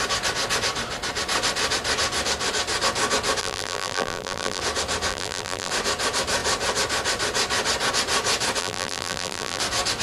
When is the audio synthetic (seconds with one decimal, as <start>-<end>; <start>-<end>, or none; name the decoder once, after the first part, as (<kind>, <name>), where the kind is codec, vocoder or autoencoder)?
3.4-4.6 (vocoder, BigVGAN v2); 5.1-5.7; 8.6-9.6